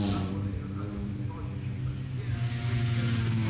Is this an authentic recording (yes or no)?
yes